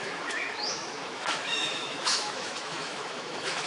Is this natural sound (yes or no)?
no